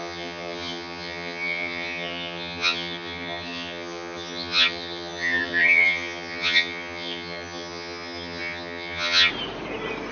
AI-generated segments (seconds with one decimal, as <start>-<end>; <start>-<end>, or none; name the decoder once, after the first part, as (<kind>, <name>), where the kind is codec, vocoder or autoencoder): 0.0-9.3 (vocoder, HiFi-GAN)